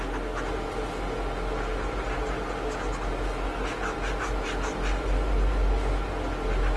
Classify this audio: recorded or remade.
recorded